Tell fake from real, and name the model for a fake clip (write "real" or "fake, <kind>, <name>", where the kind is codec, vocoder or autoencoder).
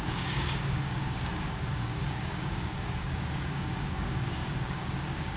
fake, codec, DAC